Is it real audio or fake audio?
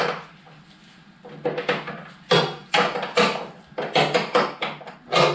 real